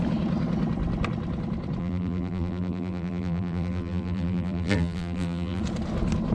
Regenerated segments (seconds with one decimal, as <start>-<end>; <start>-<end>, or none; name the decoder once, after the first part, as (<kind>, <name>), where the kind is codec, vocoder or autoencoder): 1.8-5.6 (vocoder, BigVGAN v2)